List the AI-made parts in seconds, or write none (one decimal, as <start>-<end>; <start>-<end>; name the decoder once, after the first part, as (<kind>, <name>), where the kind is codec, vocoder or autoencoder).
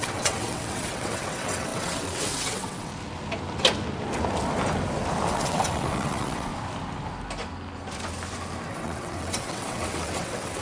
0.0-2.9 (vocoder, WaveNeXt); 5.3-6.5; 8.7-10.6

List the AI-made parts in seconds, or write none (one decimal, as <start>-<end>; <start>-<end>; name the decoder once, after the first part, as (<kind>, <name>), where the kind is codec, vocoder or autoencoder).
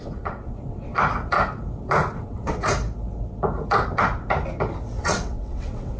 0.0-0.9 (vocoder, WaveNeXt); 2.1-2.6; 5.0-6.0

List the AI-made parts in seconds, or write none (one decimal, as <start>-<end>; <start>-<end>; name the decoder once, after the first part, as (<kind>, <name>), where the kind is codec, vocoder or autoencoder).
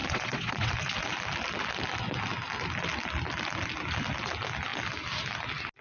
0.0-0.7 (vocoder, WaveNeXt)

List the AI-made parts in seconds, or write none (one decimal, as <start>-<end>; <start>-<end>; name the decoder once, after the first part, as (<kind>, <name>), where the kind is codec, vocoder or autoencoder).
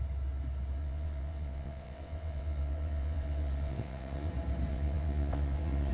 0.8-4.3 (vocoder, WaveNeXt); 4.7-5.9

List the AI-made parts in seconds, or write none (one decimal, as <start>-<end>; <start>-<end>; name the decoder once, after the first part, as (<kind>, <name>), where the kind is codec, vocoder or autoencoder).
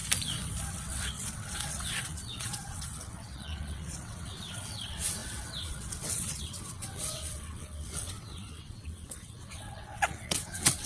0.7-10.9 (vocoder, WaveNeXt)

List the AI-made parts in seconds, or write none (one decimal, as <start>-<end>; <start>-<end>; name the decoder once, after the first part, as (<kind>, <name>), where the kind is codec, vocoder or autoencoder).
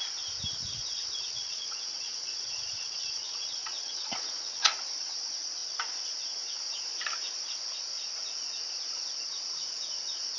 0.6-4.7 (vocoder, WaveNeXt)